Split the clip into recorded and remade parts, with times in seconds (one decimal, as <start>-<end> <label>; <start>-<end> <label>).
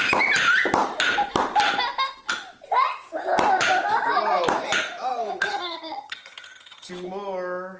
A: 0.0-5.5 recorded; 5.5-6.9 remade; 6.9-7.8 recorded